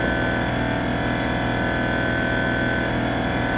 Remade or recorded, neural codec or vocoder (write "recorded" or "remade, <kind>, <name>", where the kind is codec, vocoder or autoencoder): recorded